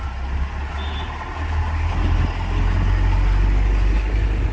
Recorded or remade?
recorded